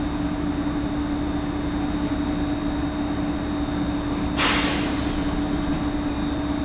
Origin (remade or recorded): recorded